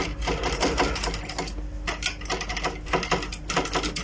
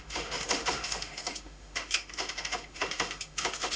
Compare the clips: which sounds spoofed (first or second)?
second